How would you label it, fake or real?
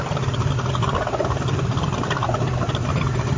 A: real